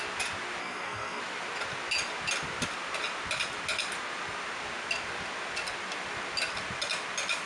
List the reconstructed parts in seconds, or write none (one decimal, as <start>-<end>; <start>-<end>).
0.6-1.2